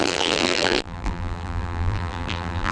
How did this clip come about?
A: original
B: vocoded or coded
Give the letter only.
B